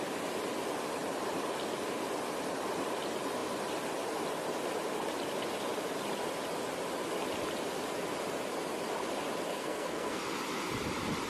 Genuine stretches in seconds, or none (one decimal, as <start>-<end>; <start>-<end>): 0.0-9.5; 10.2-11.3

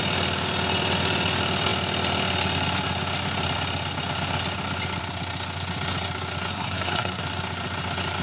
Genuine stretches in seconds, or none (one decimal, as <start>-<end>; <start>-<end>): 0.0-6.5; 7.2-8.2